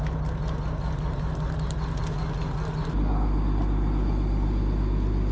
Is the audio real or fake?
real